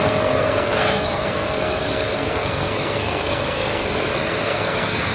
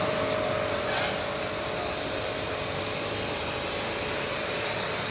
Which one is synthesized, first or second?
first